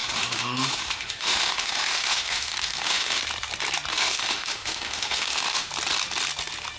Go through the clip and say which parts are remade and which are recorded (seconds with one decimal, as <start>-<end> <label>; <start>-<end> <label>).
0.0-3.2 remade; 3.2-3.9 recorded; 3.9-5.7 remade; 5.7-6.8 recorded